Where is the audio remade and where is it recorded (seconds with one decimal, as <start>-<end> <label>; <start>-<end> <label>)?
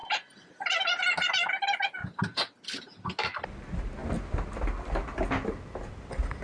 0.0-6.4 recorded